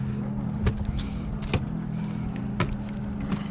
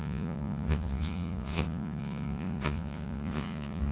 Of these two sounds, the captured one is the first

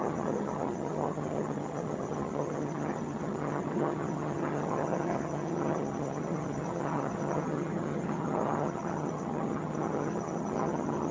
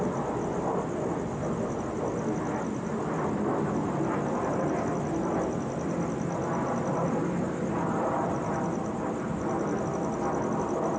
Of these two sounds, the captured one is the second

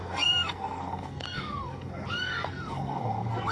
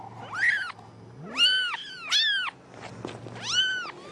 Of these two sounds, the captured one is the second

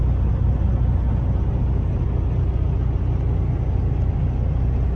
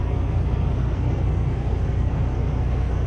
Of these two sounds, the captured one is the first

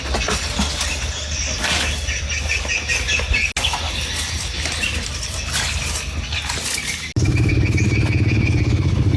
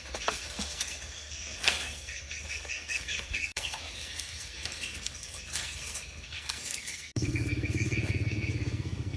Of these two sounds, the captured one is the first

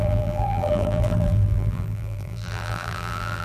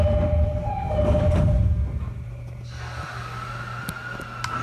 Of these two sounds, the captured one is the second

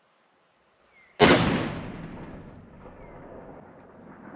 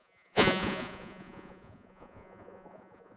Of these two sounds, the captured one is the first